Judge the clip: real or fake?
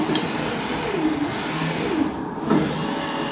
real